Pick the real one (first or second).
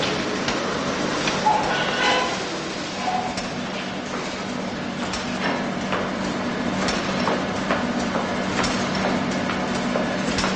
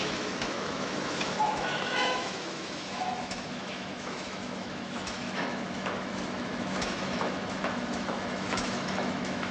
first